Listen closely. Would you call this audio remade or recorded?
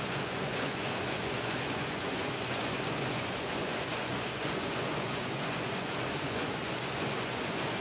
remade